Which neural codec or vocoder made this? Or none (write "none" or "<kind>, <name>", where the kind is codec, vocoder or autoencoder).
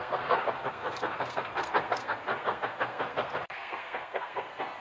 codec, SNAC